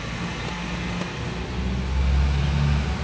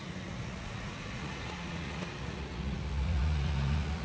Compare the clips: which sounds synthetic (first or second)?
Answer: second